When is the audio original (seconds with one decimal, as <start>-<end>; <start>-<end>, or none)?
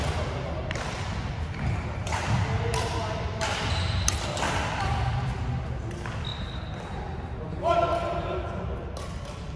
0.0-9.6